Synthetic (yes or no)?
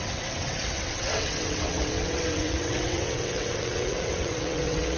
yes